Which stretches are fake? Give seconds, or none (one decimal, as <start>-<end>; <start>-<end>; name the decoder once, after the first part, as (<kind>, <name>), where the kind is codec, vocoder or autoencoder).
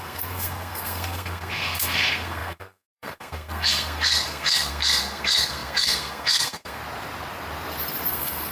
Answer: 0.0-6.8 (codec, SNAC); 8.1-8.5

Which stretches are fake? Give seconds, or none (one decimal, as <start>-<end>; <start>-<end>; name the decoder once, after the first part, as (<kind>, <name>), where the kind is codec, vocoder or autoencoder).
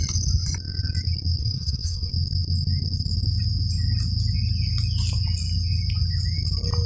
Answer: 1.4-2.1 (codec, SNAC)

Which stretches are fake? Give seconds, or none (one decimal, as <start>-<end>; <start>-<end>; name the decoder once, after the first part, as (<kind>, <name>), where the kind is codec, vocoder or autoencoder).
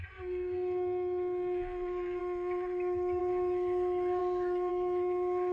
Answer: 0.0-2.2 (codec, SNAC); 3.2-5.5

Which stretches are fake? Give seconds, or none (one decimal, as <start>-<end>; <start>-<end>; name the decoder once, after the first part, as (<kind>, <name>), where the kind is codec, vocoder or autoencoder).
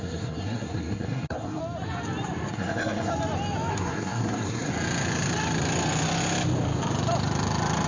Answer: 0.0-1.6 (codec, SNAC); 2.5-3.1; 3.7-4.7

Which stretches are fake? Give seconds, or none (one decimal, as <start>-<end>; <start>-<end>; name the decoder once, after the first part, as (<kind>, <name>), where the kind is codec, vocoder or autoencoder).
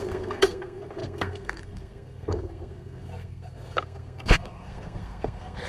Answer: 0.0-5.7 (codec, SNAC)